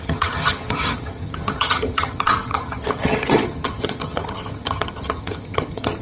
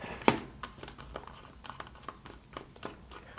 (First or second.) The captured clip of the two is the second